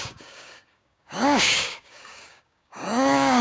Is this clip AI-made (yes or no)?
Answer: yes